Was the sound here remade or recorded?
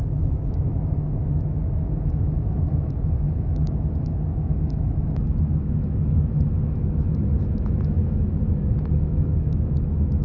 remade